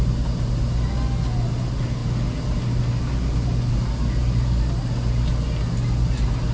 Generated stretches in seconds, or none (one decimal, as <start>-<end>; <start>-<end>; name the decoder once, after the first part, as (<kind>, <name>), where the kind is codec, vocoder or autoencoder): none